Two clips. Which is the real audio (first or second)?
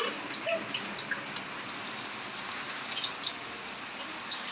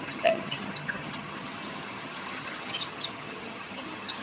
first